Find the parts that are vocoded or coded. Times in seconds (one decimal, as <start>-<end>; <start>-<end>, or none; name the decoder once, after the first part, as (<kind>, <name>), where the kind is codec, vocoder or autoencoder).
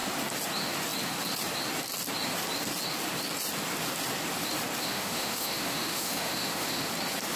4.8-6.9 (autoencoder, DAC-VAE)